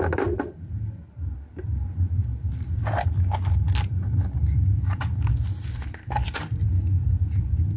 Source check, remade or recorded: recorded